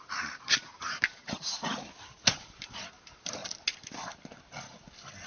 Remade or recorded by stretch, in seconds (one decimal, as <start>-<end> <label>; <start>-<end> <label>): 0.0-1.2 remade; 1.2-2.3 recorded; 2.3-3.4 remade; 3.4-5.3 recorded